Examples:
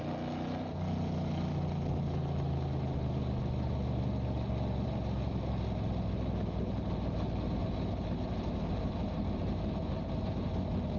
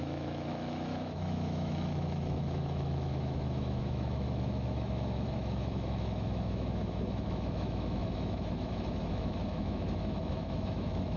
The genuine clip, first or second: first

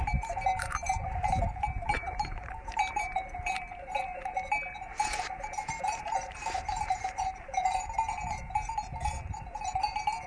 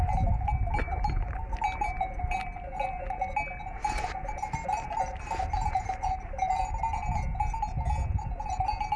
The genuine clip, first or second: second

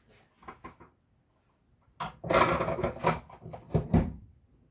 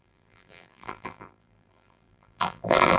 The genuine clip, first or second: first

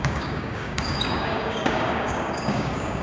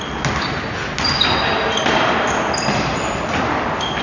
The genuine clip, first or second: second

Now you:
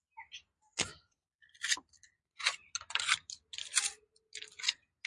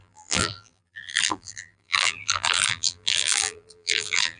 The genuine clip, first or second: first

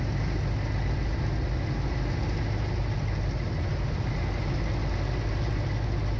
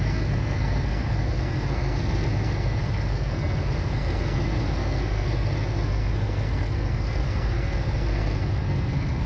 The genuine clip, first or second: first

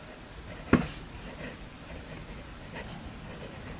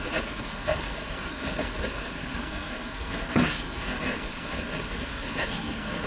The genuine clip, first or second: first